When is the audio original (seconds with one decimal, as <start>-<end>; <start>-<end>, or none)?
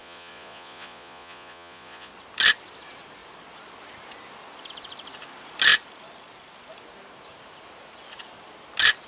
2.1-9.1